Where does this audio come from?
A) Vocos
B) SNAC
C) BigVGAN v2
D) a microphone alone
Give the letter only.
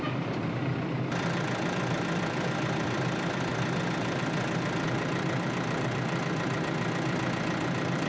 C